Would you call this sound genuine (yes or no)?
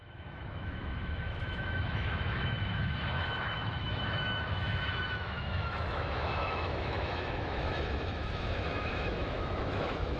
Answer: no